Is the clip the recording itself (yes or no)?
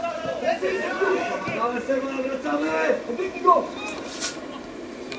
no